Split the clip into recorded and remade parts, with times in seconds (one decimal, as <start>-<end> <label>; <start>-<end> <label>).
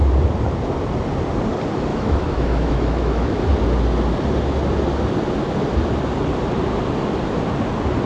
0.0-1.9 recorded; 1.9-3.4 remade; 3.4-8.1 recorded